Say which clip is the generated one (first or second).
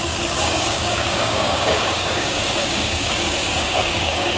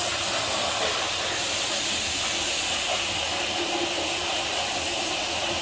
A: first